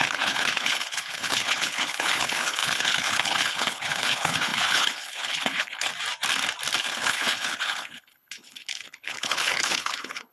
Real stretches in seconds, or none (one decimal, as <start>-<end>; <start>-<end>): 5.9-6.8